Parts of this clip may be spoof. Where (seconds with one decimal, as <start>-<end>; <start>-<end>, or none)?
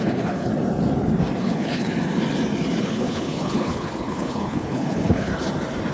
0.0-0.5; 1.4-1.9; 2.8-5.3